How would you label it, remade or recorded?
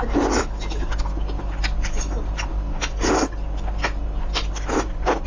recorded